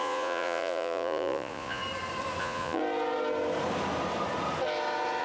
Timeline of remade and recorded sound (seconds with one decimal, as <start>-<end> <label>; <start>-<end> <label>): 0.0-1.8 remade; 1.8-2.4 recorded; 2.4-2.8 remade; 2.8-5.2 recorded